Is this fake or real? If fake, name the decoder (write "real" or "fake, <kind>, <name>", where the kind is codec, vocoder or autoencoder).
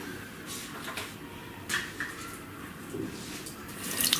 real